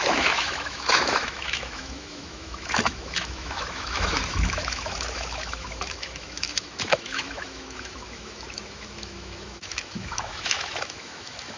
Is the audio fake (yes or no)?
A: yes